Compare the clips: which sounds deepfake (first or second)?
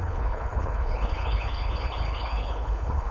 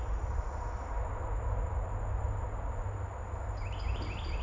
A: first